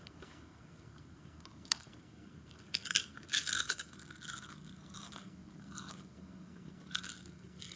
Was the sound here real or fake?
fake